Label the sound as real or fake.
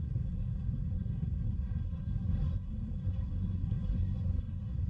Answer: fake